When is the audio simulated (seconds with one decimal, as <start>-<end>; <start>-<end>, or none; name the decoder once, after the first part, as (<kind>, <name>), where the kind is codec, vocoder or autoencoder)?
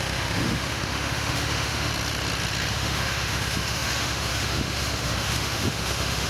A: 0.0-1.9 (autoencoder, DAC-VAE); 2.7-6.3